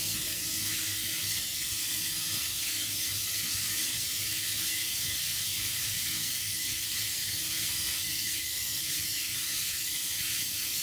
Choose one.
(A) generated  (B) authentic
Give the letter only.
A